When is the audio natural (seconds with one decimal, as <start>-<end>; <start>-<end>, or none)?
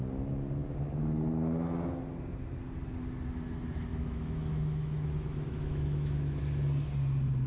0.0-3.9; 6.4-7.5